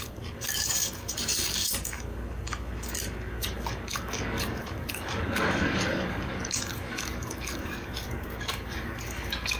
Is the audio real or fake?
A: fake